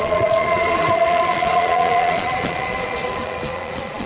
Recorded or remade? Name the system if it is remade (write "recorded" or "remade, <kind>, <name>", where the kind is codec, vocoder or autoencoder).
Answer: remade, vocoder, Vocos